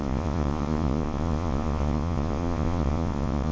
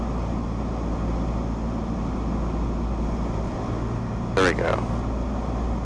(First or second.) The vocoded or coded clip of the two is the first